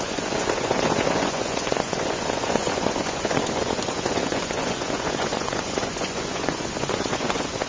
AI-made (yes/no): yes